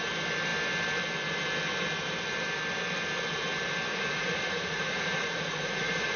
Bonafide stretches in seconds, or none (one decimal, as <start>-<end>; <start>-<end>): 0.0-3.9